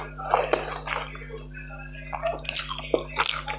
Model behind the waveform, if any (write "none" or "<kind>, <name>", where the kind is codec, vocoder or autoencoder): none